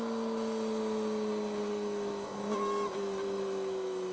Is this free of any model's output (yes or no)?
yes